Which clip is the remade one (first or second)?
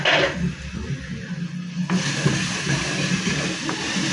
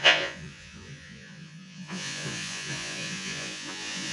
second